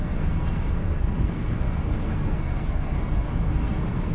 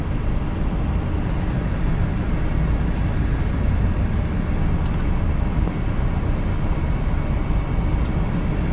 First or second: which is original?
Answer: second